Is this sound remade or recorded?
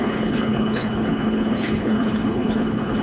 remade